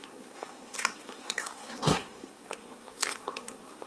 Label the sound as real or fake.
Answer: fake